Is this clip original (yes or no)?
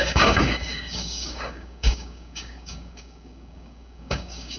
no